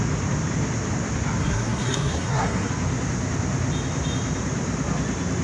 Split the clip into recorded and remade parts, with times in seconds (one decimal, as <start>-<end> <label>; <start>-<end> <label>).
0.0-1.4 recorded; 1.4-2.7 remade; 2.7-5.4 recorded